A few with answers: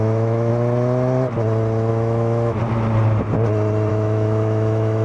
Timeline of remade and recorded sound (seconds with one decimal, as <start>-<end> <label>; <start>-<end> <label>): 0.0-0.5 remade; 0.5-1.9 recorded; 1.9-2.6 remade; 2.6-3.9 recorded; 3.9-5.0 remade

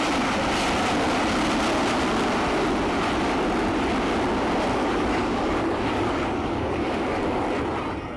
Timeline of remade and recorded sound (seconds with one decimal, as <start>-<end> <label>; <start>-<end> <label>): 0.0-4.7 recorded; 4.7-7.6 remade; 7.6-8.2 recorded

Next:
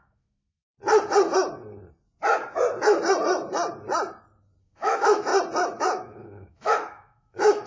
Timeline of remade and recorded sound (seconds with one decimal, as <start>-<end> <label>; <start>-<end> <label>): 0.0-0.7 remade; 0.7-4.6 recorded; 4.6-5.3 remade; 5.3-5.8 recorded; 5.8-7.7 remade

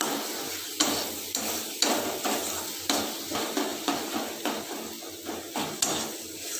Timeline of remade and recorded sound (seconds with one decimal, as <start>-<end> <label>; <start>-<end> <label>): 0.0-6.6 recorded

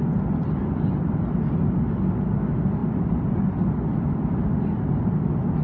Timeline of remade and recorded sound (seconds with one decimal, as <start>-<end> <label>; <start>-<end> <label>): 0.0-2.8 recorded; 2.8-4.6 remade; 4.6-5.6 recorded

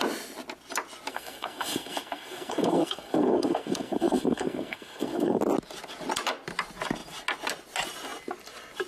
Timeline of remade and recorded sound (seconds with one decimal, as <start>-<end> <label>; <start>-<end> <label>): 0.0-1.1 recorded; 1.1-5.4 remade; 5.4-8.9 recorded